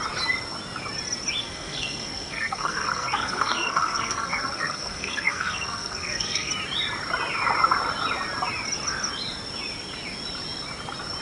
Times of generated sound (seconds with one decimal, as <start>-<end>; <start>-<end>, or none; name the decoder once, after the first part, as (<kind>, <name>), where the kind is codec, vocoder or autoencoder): 1.4-6.5 (codec, SNAC)